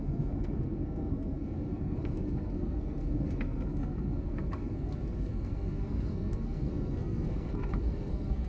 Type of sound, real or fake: fake